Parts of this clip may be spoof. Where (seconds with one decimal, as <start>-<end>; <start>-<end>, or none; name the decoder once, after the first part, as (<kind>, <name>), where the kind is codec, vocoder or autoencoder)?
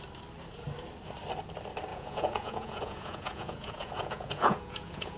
1.9-5.2 (vocoder, Vocos)